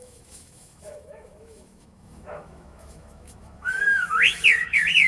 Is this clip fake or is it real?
fake